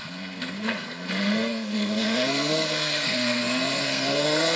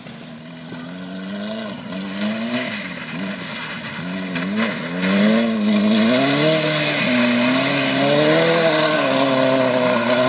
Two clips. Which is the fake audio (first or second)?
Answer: first